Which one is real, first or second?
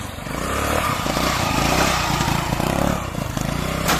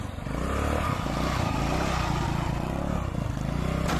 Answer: second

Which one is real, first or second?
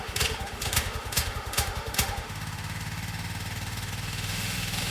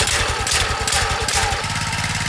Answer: second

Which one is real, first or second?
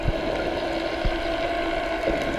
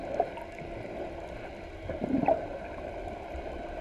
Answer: second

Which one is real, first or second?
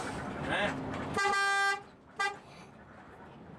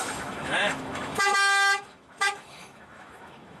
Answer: first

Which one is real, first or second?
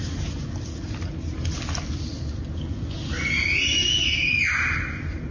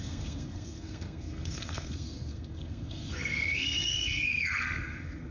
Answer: first